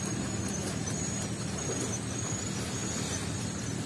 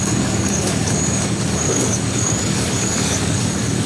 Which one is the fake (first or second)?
second